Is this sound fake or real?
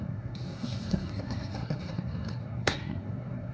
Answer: fake